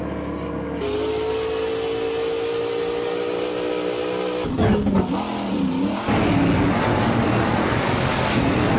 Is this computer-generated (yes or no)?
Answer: no